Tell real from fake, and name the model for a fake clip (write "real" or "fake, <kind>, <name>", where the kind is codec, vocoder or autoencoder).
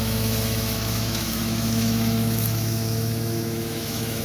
fake, autoencoder, DAC-VAE